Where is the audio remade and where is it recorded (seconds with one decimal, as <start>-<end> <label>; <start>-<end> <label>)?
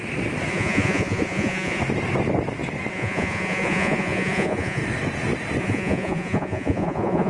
0.0-0.5 recorded; 0.5-1.8 remade; 1.8-2.9 recorded; 2.9-4.8 remade; 4.8-5.6 recorded; 5.6-7.3 remade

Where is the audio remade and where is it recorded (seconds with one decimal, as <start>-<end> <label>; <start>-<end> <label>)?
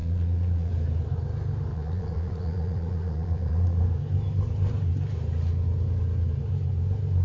0.0-0.7 remade; 0.7-1.7 recorded; 1.7-3.8 remade; 3.8-7.2 recorded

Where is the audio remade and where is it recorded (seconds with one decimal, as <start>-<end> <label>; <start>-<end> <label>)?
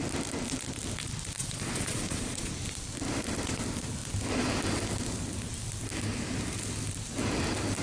0.0-1.4 recorded; 1.4-2.5 remade; 2.5-7.8 recorded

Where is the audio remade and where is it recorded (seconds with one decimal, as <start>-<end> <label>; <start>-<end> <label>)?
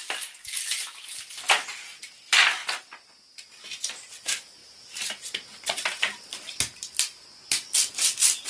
0.0-8.5 recorded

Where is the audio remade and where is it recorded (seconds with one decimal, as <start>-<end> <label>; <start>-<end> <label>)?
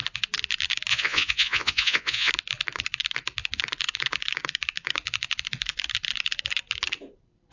0.0-0.9 recorded; 0.9-2.3 remade; 2.3-7.5 recorded